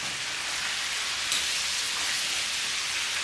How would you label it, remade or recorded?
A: recorded